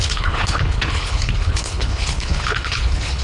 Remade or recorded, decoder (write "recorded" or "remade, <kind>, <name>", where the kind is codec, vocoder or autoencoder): remade, codec, HILCodec